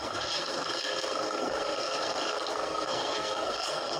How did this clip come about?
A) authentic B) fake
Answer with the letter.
B